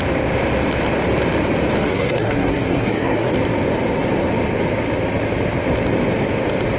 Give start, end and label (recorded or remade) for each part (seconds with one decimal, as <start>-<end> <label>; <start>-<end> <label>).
0.0-1.8 recorded; 1.8-3.3 remade; 3.3-6.8 recorded

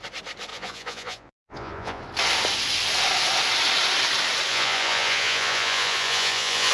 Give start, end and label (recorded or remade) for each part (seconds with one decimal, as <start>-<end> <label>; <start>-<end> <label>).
0.0-0.5 recorded; 0.5-2.0 remade; 2.0-4.5 recorded; 4.5-6.7 remade

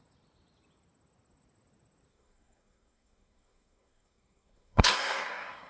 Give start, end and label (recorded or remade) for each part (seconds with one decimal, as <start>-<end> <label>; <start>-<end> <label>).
0.0-2.1 recorded; 2.1-5.7 remade

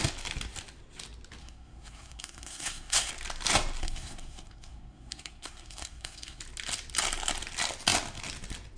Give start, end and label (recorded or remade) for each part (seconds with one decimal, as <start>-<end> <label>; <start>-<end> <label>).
0.0-1.4 recorded; 1.4-3.1 remade; 3.1-3.8 recorded; 3.8-6.4 remade; 6.4-8.8 recorded

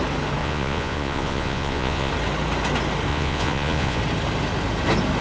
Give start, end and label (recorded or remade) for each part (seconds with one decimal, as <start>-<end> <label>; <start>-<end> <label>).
0.0-0.4 recorded; 0.4-2.1 remade; 2.1-3.1 recorded; 3.1-4.0 remade; 4.0-5.2 recorded

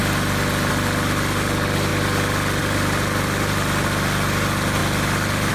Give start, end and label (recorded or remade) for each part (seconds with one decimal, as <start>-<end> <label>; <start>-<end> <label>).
0.0-5.5 recorded

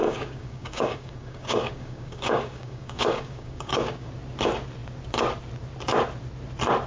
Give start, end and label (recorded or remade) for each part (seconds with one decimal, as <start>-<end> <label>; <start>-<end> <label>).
0.0-4.1 remade; 4.1-6.9 recorded

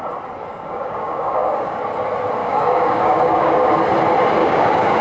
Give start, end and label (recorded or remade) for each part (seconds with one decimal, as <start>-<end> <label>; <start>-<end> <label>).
0.0-0.5 recorded; 0.5-1.8 remade; 1.8-2.4 recorded; 2.4-3.7 remade; 3.7-4.4 recorded; 4.4-5.0 remade